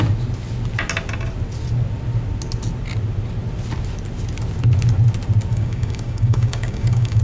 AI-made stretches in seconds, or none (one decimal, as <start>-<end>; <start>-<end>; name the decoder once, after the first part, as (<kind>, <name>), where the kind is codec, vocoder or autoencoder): 5.5-7.2 (codec, DAC)